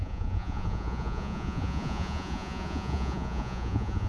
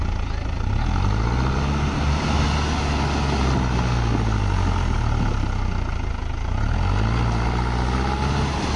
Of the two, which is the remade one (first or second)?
first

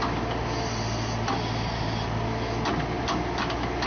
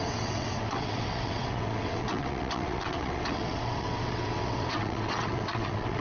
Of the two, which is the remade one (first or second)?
second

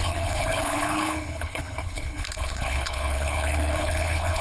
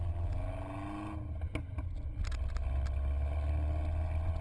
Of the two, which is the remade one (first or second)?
first